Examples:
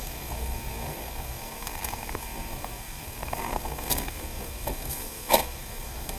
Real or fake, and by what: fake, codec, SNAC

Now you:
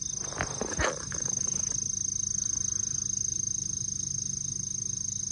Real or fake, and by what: real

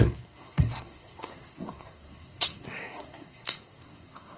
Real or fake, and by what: fake, codec, SNAC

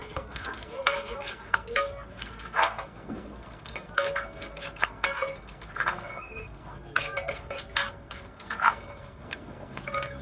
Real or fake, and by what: fake, codec, SNAC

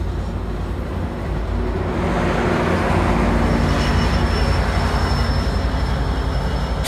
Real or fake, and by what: real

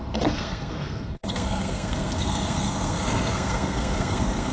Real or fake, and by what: fake, codec, SNAC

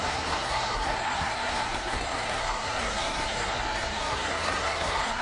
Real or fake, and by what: fake, codec, SNAC